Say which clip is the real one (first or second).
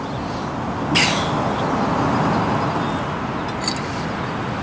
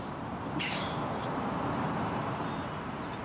first